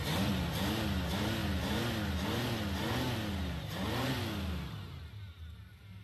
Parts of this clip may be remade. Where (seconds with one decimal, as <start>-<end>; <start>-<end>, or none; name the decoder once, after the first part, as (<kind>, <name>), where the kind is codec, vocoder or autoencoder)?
none